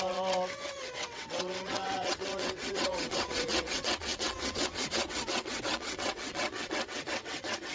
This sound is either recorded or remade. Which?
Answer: remade